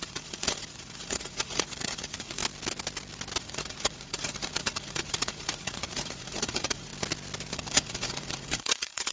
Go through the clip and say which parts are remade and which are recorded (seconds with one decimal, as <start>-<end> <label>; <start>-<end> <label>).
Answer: 0.0-2.4 remade; 2.4-3.4 recorded; 3.4-6.9 remade; 6.9-7.5 recorded; 7.5-9.1 remade